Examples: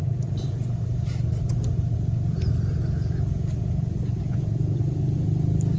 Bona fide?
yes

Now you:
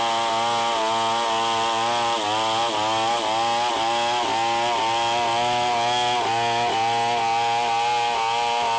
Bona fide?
yes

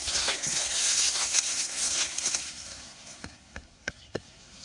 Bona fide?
no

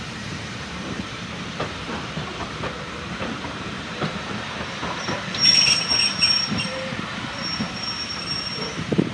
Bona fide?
no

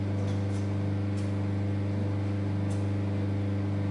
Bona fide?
yes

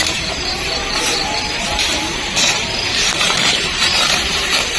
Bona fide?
no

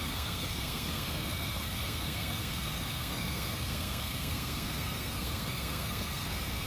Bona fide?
no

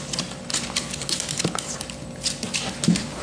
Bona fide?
yes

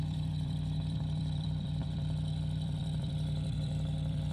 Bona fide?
no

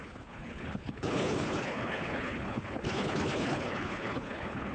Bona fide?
no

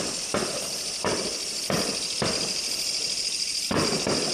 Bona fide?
yes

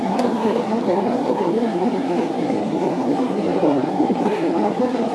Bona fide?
no